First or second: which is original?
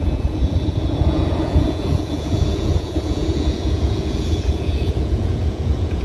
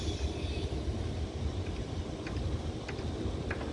second